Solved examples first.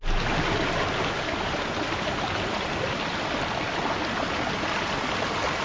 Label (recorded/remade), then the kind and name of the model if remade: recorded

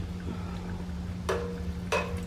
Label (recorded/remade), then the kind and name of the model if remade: recorded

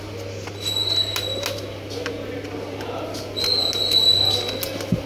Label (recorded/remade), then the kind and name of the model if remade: recorded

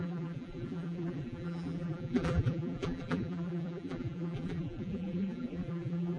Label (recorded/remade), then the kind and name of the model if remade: remade, vocoder, BigVGAN v2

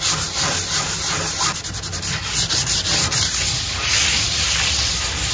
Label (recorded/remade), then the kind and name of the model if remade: remade, vocoder, BigVGAN v2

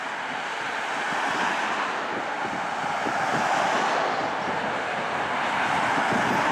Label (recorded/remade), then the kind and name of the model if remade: recorded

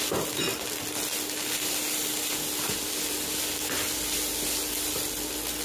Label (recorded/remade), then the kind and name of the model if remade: recorded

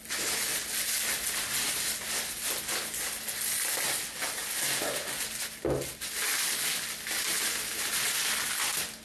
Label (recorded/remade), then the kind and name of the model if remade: recorded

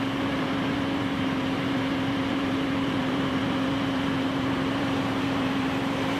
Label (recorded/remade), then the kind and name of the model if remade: remade, vocoder, BigVGAN v2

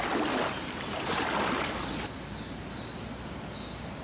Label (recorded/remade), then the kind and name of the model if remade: recorded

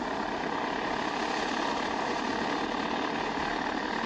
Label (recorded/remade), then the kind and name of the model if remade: recorded